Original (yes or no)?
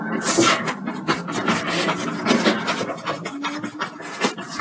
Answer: yes